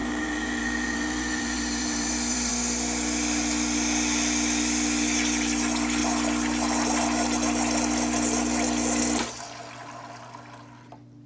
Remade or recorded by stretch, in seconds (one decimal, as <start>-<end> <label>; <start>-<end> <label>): 0.0-2.5 remade; 2.5-11.3 recorded